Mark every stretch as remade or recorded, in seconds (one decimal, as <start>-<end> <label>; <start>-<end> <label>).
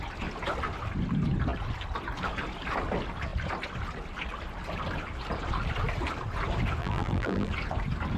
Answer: 0.0-6.8 recorded; 6.8-7.5 remade; 7.5-8.2 recorded